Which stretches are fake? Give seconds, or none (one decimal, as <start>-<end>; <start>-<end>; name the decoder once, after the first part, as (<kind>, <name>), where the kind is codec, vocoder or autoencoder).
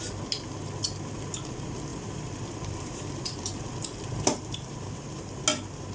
1.9-5.4 (vocoder, BigVGAN v2)